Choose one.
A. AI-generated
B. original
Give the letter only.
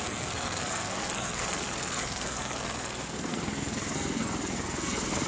A